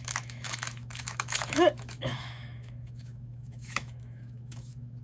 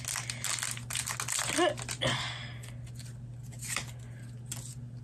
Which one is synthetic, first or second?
first